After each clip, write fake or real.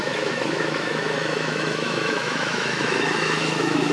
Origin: fake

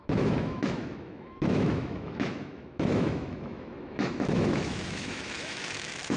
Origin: fake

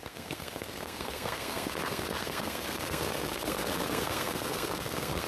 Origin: fake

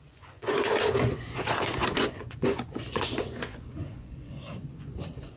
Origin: fake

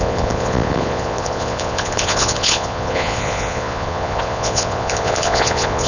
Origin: fake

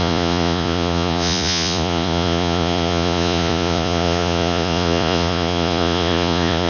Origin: fake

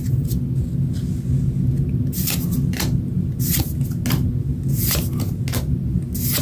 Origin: real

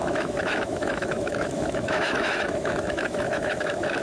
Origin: fake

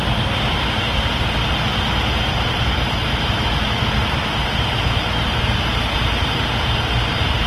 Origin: real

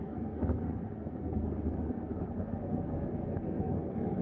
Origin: fake